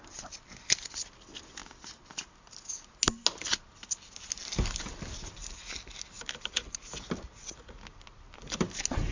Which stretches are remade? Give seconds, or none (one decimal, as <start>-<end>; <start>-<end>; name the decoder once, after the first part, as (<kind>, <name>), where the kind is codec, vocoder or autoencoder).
none